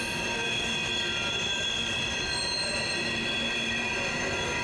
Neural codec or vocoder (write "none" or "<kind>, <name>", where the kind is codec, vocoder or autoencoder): none